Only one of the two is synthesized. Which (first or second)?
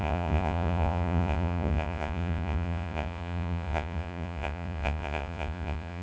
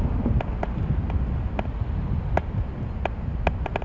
first